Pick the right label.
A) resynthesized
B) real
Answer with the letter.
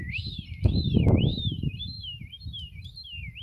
B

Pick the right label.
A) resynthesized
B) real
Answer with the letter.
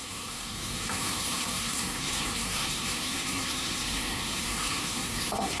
A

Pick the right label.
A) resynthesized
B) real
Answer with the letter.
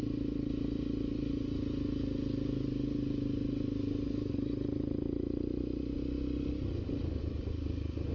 B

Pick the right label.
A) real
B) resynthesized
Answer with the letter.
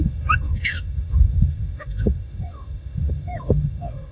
B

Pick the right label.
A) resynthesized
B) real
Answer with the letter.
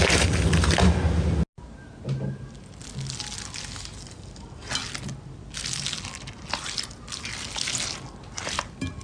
B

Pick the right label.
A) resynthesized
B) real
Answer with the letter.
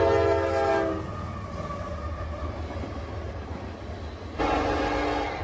B